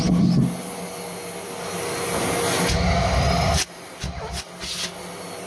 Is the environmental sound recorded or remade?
recorded